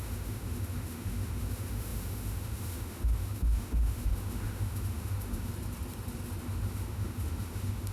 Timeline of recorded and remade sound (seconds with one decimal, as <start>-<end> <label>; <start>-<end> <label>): 0.0-5.5 remade; 5.5-6.4 recorded; 6.4-7.9 remade